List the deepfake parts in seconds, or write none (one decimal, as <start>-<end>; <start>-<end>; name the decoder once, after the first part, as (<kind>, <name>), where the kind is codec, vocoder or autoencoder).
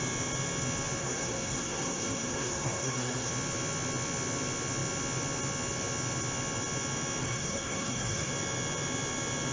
1.0-3.3 (codec, SNAC); 7.2-8.3